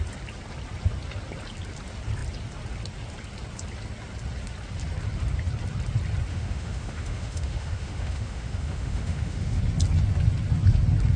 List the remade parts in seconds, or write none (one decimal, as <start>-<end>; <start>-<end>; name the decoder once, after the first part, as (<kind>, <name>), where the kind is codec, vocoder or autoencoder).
6.3-9.6 (autoencoder, DAC-VAE)